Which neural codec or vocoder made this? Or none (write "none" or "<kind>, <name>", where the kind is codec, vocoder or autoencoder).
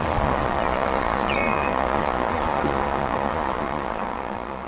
vocoder, Vocos